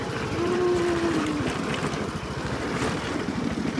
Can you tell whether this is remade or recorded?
remade